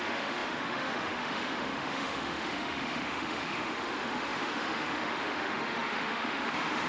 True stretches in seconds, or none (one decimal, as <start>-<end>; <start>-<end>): none

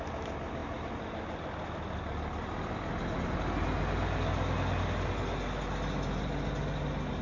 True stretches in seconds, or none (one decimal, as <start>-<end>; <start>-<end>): 0.0-7.2